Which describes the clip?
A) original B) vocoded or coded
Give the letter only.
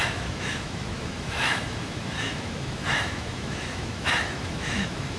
B